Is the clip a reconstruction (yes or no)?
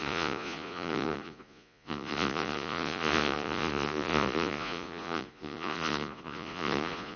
yes